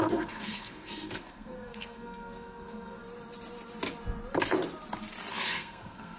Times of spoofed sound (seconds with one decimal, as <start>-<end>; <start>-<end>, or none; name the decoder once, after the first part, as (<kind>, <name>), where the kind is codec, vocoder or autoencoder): 0.0-3.0 (codec, SNAC); 5.3-6.2